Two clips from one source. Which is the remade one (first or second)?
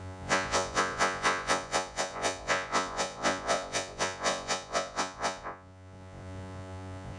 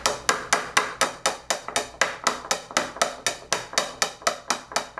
first